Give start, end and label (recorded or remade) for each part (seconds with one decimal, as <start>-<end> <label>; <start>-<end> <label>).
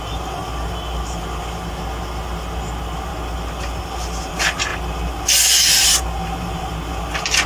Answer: 0.0-7.5 recorded